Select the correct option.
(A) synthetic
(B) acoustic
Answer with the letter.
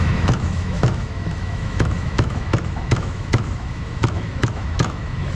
A